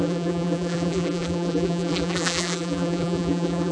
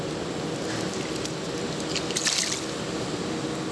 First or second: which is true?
second